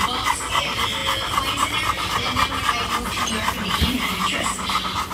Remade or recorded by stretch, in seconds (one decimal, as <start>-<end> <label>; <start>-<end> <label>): 0.0-5.1 recorded